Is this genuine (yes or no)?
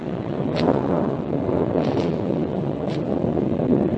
no